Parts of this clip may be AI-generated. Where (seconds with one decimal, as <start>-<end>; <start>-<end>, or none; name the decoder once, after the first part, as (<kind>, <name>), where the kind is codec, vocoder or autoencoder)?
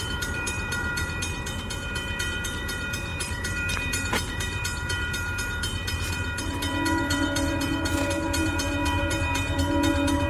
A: 0.0-10.3 (vocoder, BigVGAN v2)